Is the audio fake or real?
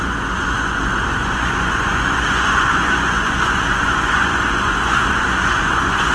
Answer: fake